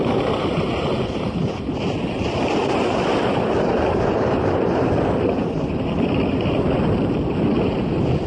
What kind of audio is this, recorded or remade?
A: recorded